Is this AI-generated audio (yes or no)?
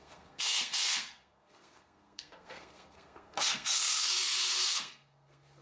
yes